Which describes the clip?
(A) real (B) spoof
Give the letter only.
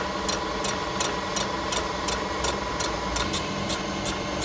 A